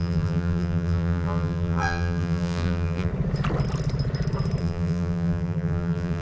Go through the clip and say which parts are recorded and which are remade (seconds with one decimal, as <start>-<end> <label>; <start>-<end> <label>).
0.0-3.1 remade; 3.1-4.6 recorded; 4.6-6.2 remade